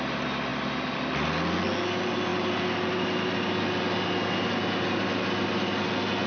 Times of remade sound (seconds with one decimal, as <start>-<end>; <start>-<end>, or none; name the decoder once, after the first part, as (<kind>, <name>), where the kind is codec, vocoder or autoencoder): none